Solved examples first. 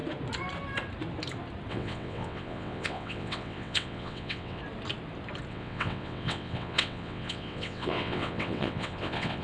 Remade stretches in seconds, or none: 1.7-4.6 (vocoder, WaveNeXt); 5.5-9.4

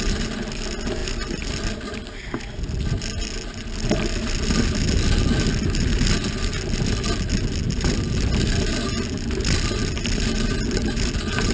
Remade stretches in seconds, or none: none

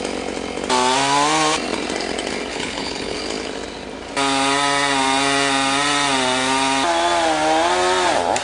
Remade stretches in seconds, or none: 2.5-3.2 (codec, HILCodec)

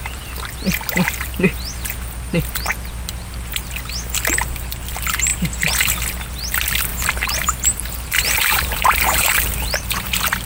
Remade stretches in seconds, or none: 6.9-10.5 (vocoder, BigVGAN v2)

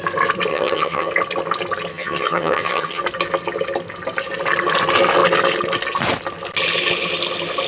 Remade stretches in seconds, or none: 0.5-1.1 (vocoder, HiFi-GAN); 1.9-3.0

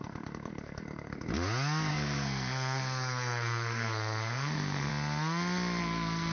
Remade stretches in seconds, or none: 0.0-1.3 (codec, SNAC); 1.9-4.9; 5.8-6.3